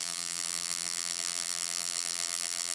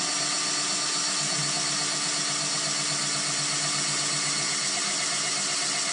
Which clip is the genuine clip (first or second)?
second